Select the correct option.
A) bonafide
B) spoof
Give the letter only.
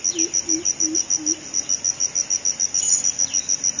A